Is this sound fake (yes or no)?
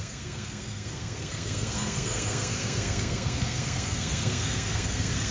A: yes